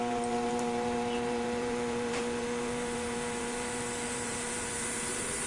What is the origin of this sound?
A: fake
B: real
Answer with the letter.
A